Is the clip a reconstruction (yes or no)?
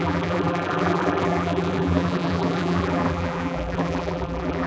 yes